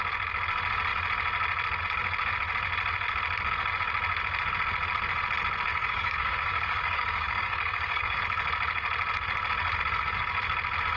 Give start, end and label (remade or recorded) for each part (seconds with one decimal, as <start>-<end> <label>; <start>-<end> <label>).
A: 0.0-5.7 recorded; 5.7-8.2 remade; 8.2-11.0 recorded